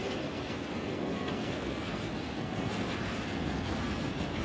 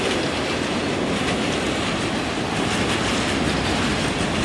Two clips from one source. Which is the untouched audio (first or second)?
second